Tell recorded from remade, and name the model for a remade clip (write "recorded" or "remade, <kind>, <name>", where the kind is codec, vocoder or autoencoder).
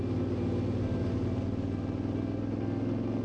recorded